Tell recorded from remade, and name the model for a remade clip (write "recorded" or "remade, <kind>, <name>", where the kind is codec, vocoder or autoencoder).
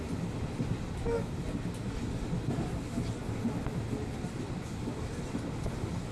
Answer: recorded